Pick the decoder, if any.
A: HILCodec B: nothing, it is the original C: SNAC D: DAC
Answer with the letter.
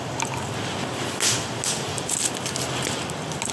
B